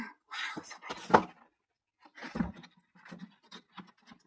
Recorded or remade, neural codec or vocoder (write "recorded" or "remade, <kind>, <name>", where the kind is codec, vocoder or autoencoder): recorded